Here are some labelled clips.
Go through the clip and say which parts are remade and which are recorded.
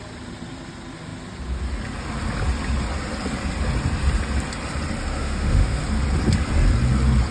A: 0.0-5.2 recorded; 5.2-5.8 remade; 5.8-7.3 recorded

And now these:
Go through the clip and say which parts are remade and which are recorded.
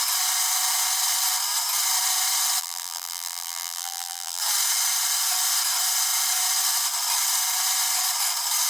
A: 0.0-2.6 recorded; 2.6-4.4 remade; 4.4-8.7 recorded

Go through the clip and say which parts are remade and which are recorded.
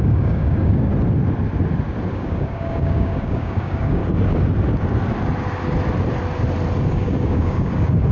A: 0.0-0.9 remade; 0.9-2.1 recorded; 2.1-4.0 remade; 4.0-6.9 recorded; 6.9-8.1 remade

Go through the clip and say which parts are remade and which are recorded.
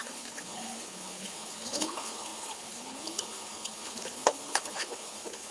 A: 0.0-5.5 remade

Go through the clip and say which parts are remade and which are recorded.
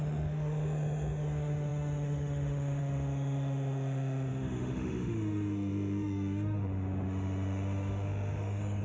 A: 0.0-8.8 remade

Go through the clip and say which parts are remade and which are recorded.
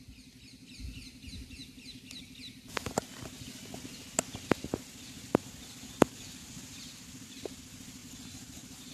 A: 0.0-8.0 recorded; 8.0-8.9 remade